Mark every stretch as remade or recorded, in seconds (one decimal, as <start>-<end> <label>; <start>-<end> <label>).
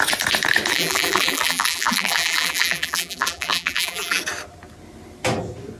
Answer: 0.0-0.7 recorded; 0.7-4.2 remade; 4.2-5.8 recorded